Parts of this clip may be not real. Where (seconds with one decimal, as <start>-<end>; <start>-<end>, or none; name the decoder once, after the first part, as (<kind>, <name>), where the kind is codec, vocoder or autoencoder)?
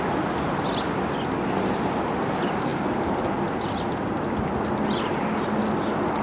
none